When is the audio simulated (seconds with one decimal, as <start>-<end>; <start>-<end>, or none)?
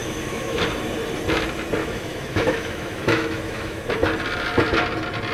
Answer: 0.0-0.6; 1.8-3.9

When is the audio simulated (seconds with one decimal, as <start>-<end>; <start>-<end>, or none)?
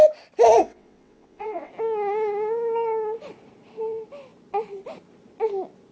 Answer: 0.6-1.7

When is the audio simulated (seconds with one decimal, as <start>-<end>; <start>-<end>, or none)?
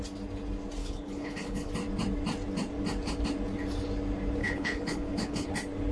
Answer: 0.8-1.7; 4.4-5.5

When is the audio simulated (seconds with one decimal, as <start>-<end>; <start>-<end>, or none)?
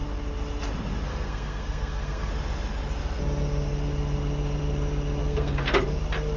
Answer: 1.1-2.3; 5.2-5.8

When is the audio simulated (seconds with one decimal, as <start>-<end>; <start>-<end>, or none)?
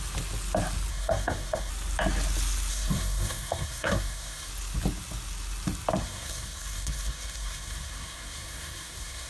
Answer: 0.9-1.7; 2.7-4.5; 6.0-9.3